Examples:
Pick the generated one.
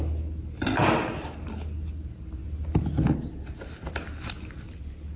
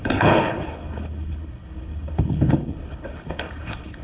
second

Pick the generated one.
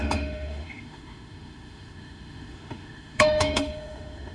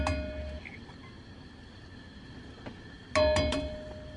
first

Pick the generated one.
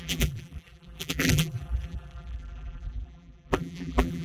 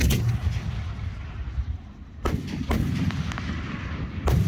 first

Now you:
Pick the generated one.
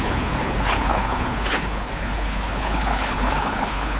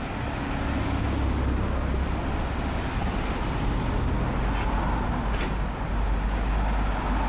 first